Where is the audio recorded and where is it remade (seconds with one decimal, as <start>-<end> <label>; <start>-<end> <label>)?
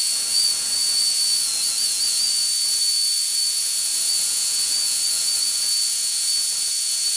0.0-7.2 remade